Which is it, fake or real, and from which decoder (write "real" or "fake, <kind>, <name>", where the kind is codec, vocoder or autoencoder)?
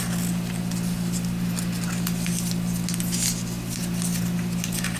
real